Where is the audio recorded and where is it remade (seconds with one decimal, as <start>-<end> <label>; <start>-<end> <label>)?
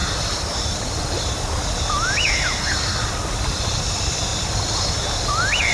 0.0-3.1 recorded; 3.1-4.3 remade; 4.3-5.3 recorded; 5.3-5.7 remade